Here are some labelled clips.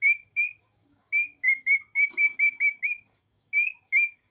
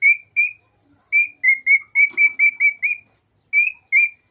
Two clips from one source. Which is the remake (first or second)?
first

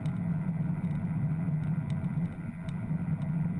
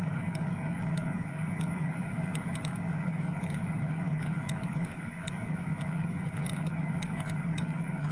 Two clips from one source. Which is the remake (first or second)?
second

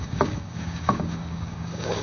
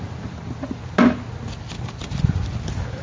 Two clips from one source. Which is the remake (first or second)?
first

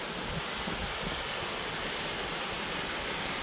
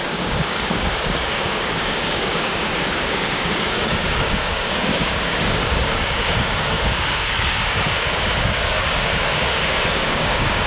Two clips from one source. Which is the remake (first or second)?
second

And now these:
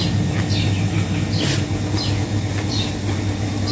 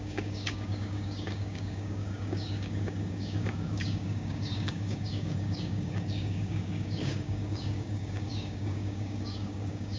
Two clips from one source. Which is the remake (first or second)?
second